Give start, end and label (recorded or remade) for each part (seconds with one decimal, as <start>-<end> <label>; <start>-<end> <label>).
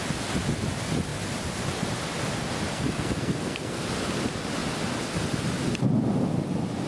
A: 0.0-2.7 recorded; 2.7-3.8 remade; 3.8-6.9 recorded